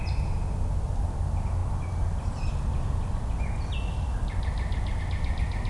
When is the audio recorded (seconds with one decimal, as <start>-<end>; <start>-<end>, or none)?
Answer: 0.0-5.7